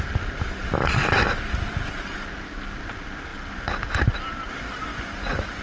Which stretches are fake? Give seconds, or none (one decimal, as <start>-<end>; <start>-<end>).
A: 4.9-5.6